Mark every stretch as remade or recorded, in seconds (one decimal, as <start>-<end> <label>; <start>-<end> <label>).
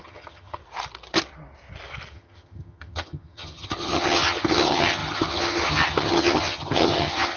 0.0-0.6 remade; 0.6-2.1 recorded; 2.1-7.4 remade